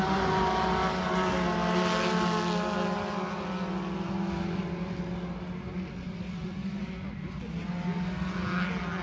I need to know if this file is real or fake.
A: real